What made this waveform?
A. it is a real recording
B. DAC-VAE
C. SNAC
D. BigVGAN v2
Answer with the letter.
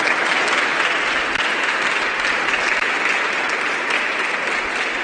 A